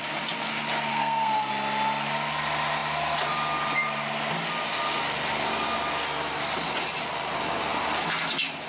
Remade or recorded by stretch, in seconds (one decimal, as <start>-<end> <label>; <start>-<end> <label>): 0.0-0.9 recorded; 0.9-1.5 remade; 1.5-8.7 recorded